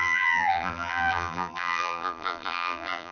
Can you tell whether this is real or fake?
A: fake